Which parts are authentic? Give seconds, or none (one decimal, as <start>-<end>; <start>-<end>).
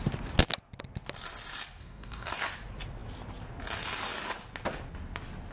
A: 0.0-1.8; 2.3-5.5